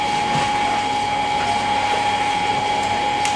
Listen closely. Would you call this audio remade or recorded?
recorded